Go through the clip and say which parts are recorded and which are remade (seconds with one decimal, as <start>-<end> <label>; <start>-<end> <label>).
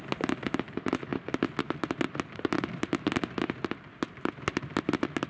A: 0.0-5.3 recorded